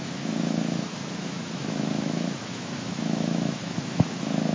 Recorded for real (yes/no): no